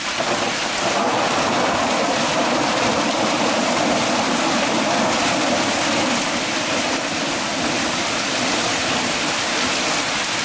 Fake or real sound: real